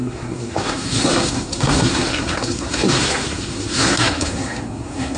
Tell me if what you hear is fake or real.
fake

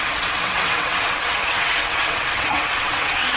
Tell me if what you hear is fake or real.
fake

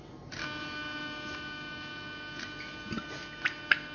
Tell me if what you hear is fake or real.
real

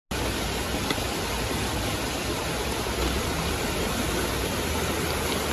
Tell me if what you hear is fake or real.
real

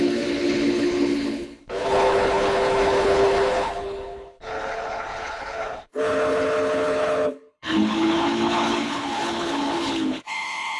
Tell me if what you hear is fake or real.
fake